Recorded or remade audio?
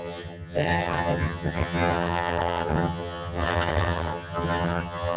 remade